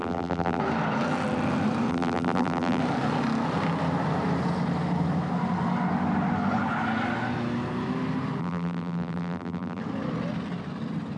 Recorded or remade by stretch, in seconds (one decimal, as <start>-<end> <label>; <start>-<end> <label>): 0.0-0.6 remade; 0.6-1.9 recorded; 1.9-2.8 remade; 2.8-8.4 recorded; 8.4-9.8 remade; 9.8-11.2 recorded